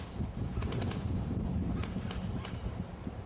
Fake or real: real